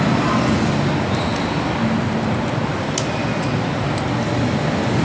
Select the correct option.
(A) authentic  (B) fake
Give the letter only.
A